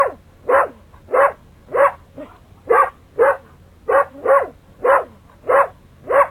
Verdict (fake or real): real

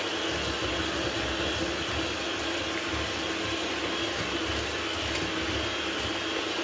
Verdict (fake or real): real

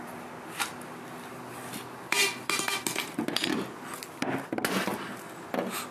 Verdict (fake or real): real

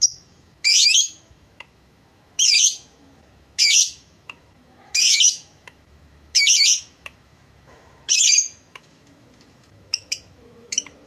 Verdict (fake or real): fake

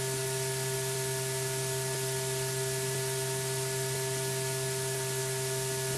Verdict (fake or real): real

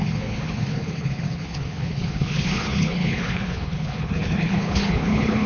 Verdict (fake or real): fake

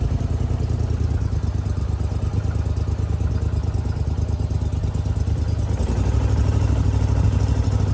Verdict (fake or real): real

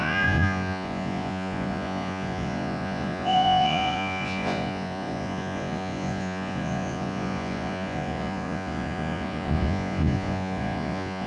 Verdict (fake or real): fake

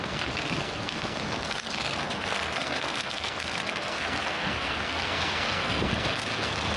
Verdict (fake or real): fake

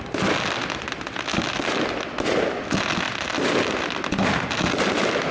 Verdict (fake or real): real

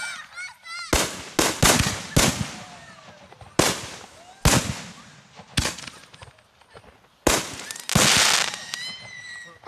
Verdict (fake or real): real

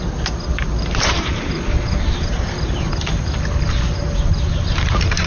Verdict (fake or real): real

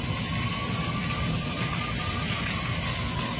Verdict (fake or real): real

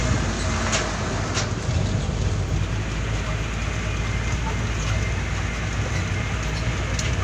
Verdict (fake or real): real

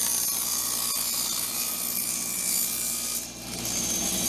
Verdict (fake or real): real